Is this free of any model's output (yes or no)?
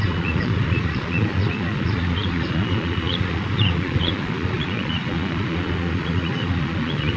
no